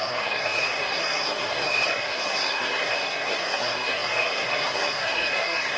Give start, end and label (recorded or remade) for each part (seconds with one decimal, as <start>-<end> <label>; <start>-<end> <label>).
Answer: 0.0-5.8 remade